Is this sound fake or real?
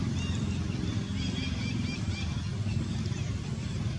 real